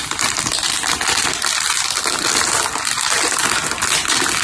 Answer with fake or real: real